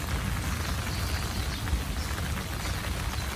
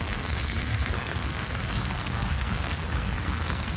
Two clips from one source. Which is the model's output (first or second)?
second